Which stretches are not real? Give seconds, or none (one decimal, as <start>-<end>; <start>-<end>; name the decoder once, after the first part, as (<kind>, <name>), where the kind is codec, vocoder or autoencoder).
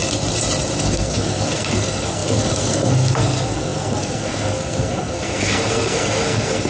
0.8-6.7 (codec, SNAC)